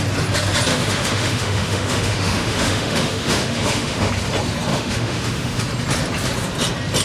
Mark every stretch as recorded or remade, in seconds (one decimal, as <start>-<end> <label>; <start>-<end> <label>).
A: 0.0-0.7 recorded; 0.7-4.1 remade; 4.1-4.7 recorded; 4.7-5.6 remade; 5.6-7.0 recorded